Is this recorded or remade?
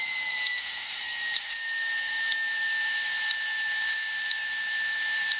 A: remade